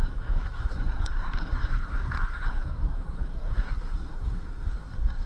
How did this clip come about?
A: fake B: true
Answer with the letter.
A